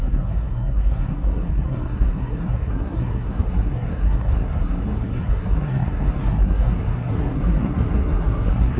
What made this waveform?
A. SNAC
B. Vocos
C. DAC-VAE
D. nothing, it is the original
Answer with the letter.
A